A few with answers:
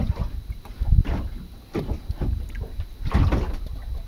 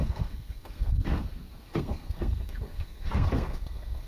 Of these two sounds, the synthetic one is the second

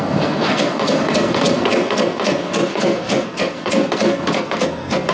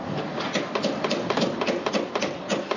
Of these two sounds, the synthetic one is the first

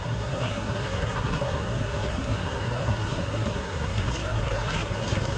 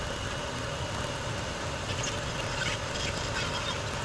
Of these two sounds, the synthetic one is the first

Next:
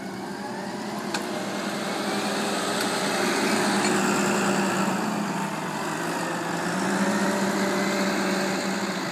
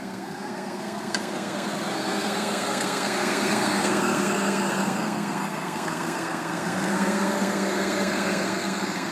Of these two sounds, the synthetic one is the second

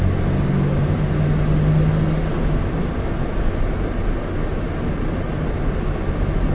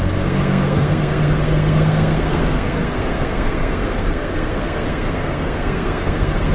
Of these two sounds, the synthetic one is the second